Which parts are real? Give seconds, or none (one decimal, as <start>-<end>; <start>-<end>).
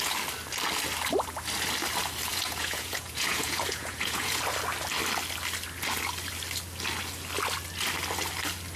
0.0-2.3; 4.4-8.8